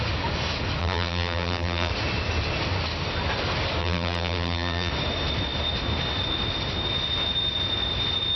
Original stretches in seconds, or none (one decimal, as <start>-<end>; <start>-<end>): 0.0-0.8; 1.9-3.8; 4.9-8.4